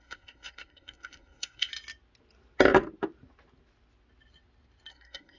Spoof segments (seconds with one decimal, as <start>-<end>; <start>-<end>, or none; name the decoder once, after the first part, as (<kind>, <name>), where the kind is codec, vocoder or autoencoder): 0.0-1.7 (codec, SNAC); 4.9-5.4